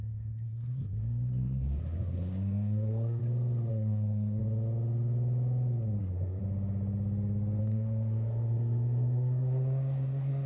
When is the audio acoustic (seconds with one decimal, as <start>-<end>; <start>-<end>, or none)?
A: 3.2-3.7; 4.4-6.0; 6.4-7.6